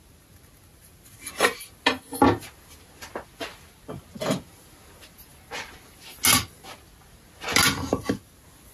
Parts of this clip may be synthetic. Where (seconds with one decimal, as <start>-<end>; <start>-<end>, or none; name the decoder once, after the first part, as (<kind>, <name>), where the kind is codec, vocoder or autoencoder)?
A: none